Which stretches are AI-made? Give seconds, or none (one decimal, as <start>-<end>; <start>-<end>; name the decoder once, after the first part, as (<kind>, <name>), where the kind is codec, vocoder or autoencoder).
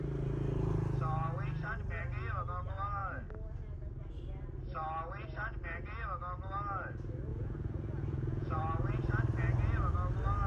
7.3-8.6 (vocoder, Vocos)